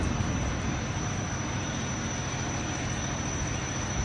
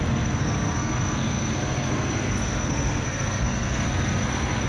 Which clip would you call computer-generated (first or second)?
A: second